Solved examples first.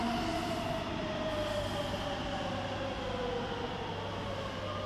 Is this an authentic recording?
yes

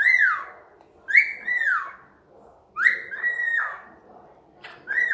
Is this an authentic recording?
yes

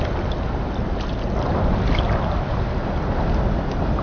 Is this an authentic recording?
yes